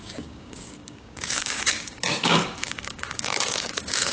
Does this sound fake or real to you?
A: fake